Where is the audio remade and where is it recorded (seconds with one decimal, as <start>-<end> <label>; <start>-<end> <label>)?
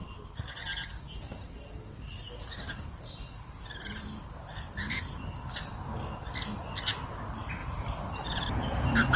0.0-7.6 recorded; 7.6-9.2 remade